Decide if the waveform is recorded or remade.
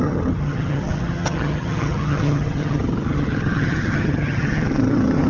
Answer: remade